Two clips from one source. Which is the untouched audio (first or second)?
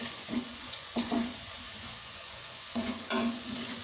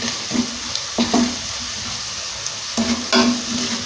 second